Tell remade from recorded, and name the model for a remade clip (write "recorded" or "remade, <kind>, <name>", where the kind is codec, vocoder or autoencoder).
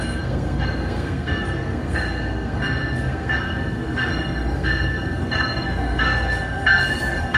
remade, codec, SNAC